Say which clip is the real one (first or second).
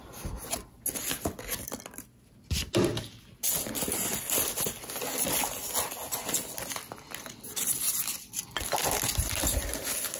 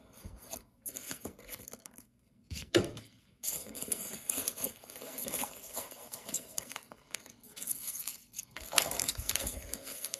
first